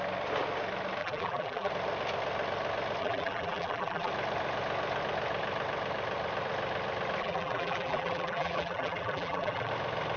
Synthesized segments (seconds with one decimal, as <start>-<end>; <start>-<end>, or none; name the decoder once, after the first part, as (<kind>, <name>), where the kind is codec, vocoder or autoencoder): 1.0-1.7 (vocoder, BigVGAN v2); 3.0-4.1; 7.2-9.7